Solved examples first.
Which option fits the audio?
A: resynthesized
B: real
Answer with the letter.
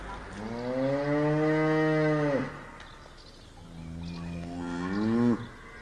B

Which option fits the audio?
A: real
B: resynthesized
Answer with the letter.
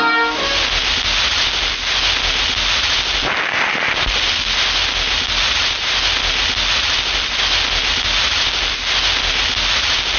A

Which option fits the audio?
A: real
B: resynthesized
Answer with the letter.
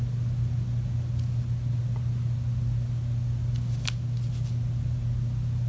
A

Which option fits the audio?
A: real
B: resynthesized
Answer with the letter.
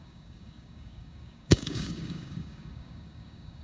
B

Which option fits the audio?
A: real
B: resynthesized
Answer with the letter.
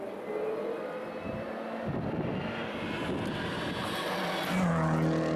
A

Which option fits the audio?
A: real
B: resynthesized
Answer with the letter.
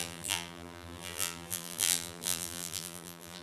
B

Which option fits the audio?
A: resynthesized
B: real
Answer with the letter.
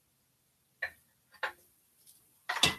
B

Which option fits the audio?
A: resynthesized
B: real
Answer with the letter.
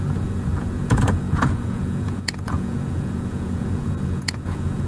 A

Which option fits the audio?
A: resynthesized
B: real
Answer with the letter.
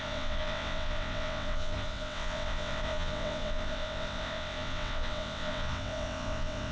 A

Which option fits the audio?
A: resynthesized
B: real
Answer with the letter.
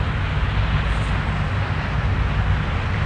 B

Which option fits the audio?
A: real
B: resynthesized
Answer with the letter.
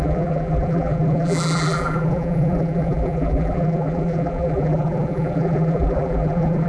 B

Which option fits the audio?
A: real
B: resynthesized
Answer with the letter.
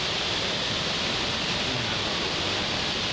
A